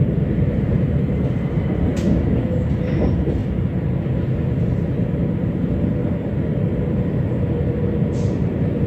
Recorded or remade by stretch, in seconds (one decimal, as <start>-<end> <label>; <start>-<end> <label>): 0.0-1.9 remade; 1.9-2.8 recorded; 2.8-3.4 remade; 3.4-8.1 recorded; 8.1-8.9 remade